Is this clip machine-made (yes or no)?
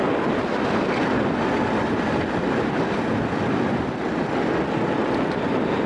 no